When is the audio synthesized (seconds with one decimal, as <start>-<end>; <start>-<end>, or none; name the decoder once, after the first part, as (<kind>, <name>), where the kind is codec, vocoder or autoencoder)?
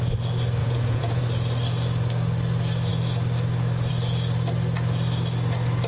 0.6-1.2 (vocoder, Vocos)